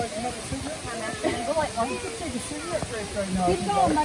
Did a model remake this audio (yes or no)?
no